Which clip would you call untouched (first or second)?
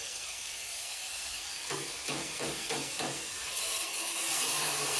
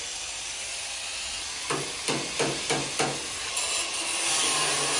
second